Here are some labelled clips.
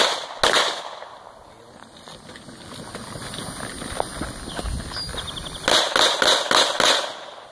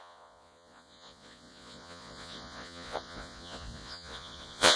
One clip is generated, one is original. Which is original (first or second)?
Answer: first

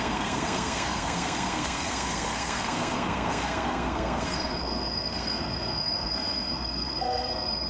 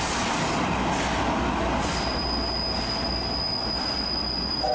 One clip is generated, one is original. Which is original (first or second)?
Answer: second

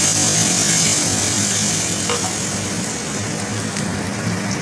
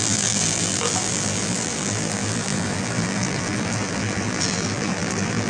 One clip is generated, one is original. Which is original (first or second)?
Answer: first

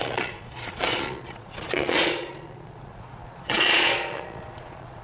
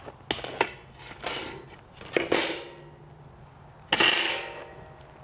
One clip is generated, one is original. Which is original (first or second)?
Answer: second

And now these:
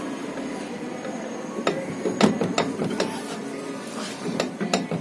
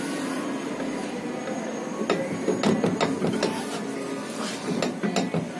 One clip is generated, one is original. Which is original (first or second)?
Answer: second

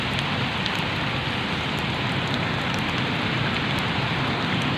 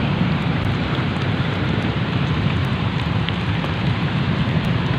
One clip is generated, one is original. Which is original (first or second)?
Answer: first